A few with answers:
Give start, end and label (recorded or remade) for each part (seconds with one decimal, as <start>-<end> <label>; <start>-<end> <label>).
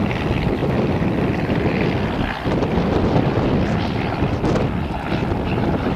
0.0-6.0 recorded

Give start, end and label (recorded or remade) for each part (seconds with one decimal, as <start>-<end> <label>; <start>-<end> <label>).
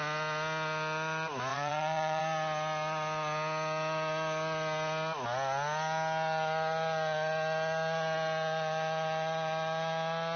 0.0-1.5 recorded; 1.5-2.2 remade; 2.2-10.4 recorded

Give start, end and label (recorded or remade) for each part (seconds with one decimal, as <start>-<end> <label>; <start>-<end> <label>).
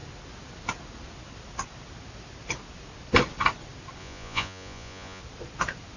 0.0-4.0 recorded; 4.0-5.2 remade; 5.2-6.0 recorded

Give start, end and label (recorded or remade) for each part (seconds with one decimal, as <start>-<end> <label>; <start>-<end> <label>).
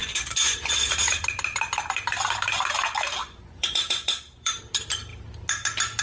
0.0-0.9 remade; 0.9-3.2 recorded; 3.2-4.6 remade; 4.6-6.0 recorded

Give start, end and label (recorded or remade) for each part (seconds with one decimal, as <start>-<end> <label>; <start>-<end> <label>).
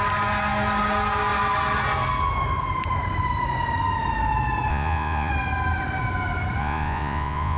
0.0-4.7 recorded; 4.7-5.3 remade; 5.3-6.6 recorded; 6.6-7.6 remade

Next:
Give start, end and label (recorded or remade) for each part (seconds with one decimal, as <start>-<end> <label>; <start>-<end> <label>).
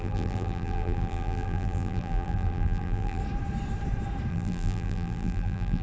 0.0-3.2 remade; 3.2-4.3 recorded; 4.3-5.8 remade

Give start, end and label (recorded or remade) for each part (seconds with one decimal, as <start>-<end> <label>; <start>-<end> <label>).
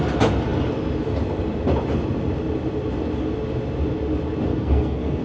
0.0-4.5 recorded; 4.5-5.2 remade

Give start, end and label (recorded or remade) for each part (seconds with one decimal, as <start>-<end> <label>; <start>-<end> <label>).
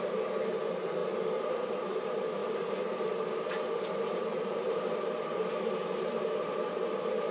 0.0-1.0 remade; 1.0-1.5 recorded; 1.5-7.3 remade